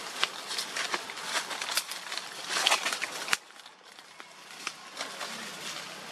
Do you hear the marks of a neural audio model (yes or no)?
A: no